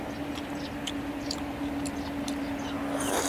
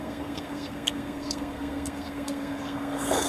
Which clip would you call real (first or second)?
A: first